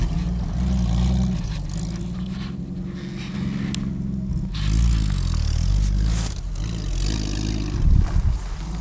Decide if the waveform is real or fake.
real